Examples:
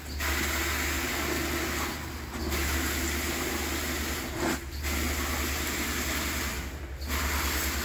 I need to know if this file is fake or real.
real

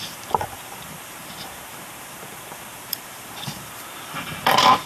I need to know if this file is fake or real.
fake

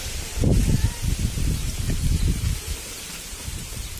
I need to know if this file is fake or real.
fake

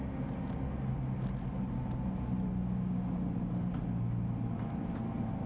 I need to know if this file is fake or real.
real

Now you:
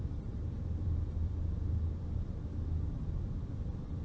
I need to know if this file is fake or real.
fake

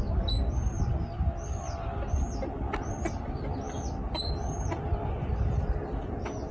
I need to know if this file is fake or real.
fake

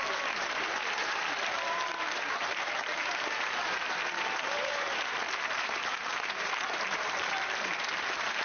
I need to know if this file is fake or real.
fake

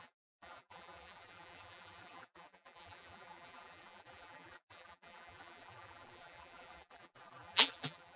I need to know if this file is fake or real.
fake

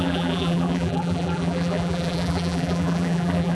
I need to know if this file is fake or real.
fake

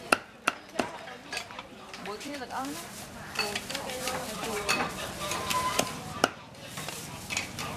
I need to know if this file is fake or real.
fake